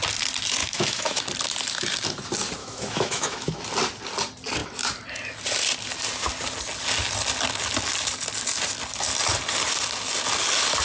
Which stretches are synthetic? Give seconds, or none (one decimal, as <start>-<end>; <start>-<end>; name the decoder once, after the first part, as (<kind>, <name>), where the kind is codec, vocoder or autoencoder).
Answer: 0.6-1.2 (autoencoder, DAC-VAE); 2.6-3.6